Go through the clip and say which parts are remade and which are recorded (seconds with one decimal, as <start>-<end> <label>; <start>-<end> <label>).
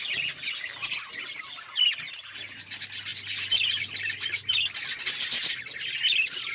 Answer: 0.0-6.5 recorded